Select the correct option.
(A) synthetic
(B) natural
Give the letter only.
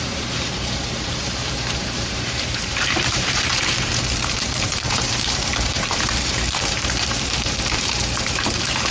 A